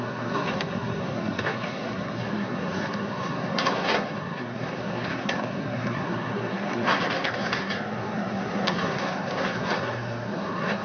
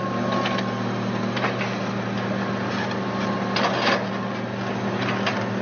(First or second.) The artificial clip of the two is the first